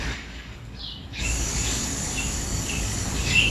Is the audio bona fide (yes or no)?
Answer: no